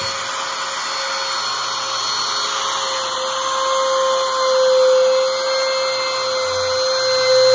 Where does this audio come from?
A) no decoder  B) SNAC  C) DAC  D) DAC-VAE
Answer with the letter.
A